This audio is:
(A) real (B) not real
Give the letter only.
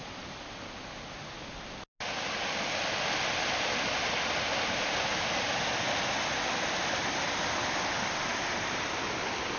A